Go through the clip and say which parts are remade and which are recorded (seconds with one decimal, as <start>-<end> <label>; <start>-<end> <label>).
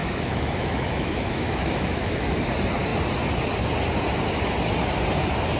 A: 0.0-2.5 remade; 2.5-5.6 recorded